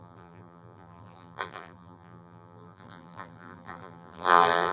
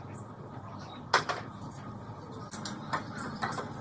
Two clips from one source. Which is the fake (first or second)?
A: first